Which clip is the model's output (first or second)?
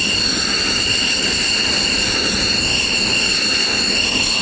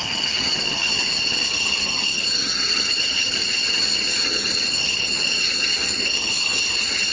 second